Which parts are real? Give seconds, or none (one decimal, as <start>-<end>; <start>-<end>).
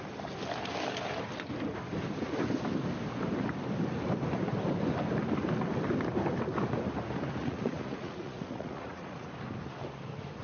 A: 0.0-7.4; 9.3-10.4